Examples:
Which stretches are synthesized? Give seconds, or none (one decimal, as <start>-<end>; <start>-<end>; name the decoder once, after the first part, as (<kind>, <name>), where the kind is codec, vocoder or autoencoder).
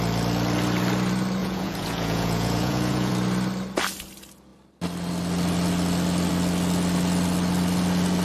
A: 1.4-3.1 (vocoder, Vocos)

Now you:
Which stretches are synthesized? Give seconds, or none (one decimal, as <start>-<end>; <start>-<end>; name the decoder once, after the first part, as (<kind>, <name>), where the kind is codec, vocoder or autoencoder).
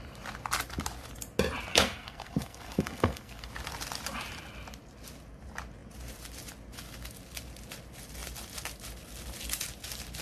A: 1.7-3.5 (codec, SNAC)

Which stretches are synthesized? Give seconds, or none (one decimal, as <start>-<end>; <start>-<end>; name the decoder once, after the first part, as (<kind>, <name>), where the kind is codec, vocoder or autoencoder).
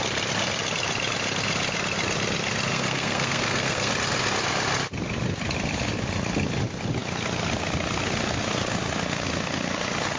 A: 2.7-3.9 (codec, SNAC)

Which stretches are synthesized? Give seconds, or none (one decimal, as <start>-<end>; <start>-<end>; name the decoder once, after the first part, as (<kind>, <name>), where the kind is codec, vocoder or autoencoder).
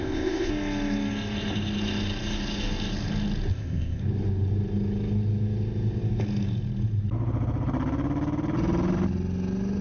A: 0.0-0.5 (codec, ZipCodec); 3.5-4.0